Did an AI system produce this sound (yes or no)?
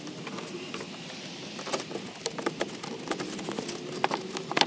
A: no